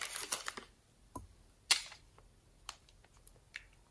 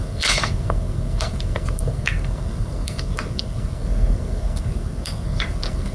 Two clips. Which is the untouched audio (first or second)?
first